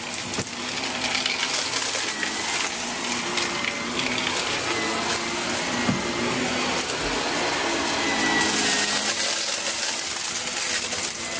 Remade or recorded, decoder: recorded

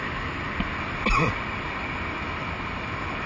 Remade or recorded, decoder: recorded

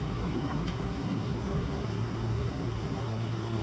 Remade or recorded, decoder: remade, codec, SNAC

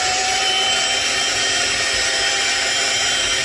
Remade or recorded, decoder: remade, vocoder, BigVGAN v2